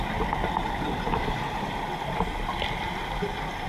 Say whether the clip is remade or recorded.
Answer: recorded